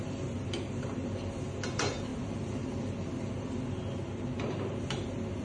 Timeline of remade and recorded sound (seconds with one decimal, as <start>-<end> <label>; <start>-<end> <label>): 0.0-5.4 recorded